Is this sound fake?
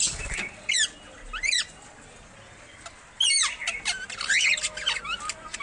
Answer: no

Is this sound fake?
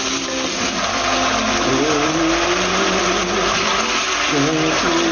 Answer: no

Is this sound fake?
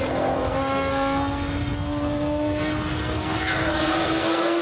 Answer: yes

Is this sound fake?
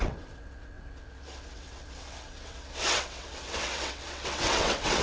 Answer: yes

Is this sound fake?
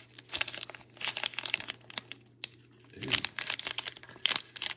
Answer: no